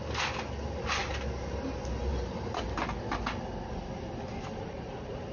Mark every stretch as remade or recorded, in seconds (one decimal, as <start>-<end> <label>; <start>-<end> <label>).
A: 0.0-1.0 recorded; 1.0-3.4 remade; 3.4-4.3 recorded; 4.3-5.3 remade